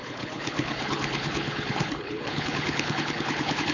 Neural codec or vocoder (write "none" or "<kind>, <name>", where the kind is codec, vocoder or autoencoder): codec, HILCodec